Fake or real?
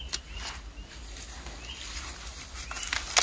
real